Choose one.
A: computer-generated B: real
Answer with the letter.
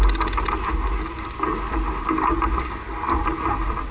B